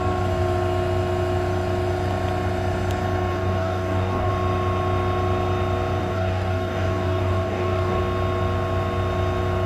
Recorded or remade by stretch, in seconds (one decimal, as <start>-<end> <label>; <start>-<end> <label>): 0.0-3.3 recorded; 3.3-4.3 remade; 4.3-6.0 recorded; 6.0-8.0 remade; 8.0-9.7 recorded

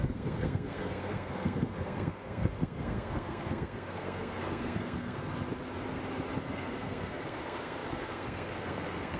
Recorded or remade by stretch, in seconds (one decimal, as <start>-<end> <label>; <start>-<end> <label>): 0.0-5.3 remade; 5.3-6.5 recorded; 6.5-9.2 remade

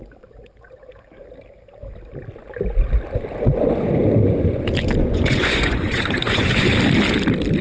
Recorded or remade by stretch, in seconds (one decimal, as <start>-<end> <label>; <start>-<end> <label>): 0.0-5.0 recorded; 5.0-6.7 remade; 6.7-7.6 recorded

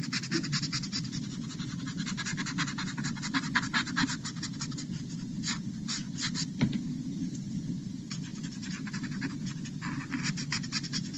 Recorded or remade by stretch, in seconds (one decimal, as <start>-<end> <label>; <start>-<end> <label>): 0.0-11.2 recorded

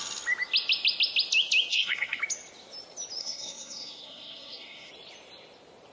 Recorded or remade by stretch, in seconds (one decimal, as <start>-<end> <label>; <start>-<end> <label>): 0.0-1.7 recorded; 1.7-2.2 remade; 2.2-3.2 recorded; 3.2-4.9 remade; 4.9-5.9 recorded